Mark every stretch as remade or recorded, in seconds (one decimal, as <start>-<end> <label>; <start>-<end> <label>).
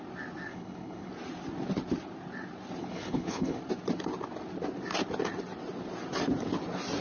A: 0.0-0.5 recorded; 0.5-1.1 remade; 1.1-2.8 recorded; 2.8-3.6 remade; 3.6-7.0 recorded